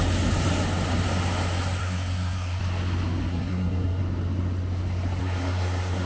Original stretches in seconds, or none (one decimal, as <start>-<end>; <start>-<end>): 0.0-1.8; 2.6-3.3; 4.0-5.2